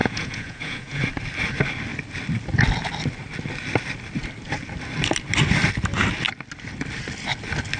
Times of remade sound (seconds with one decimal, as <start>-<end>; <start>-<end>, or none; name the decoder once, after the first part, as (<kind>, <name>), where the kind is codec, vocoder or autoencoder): 0.0-1.0 (vocoder, Vocos)